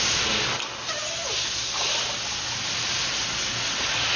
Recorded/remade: recorded